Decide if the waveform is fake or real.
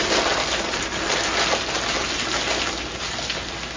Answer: real